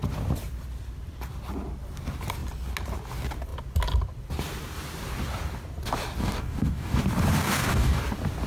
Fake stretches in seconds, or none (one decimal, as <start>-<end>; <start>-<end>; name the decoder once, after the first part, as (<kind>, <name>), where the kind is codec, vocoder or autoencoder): 6.2-7.0 (codec, DAC); 7.4-8.0